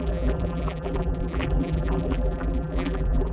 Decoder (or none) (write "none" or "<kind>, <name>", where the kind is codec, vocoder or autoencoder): vocoder, BigVGAN v2